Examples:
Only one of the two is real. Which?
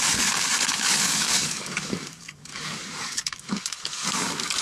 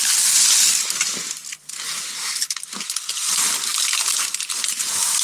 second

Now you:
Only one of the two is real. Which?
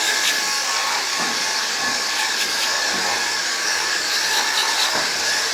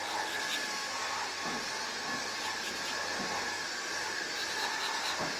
second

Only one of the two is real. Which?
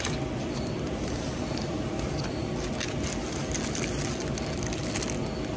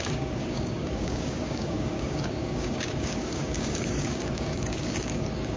first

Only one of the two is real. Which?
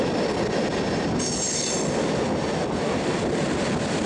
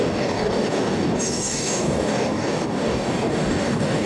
first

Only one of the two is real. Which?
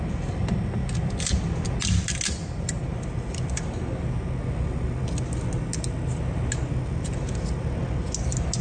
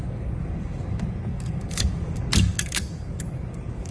first